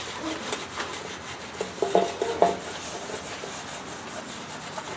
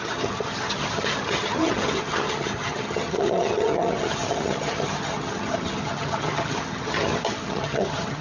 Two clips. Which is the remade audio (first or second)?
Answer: second